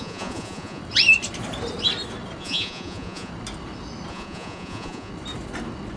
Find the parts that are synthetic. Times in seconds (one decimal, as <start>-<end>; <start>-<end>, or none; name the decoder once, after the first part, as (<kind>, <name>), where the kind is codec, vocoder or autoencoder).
0.0-0.8 (vocoder, Vocos); 2.4-3.3; 4.1-5.1